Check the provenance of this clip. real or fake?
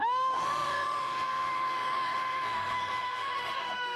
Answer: fake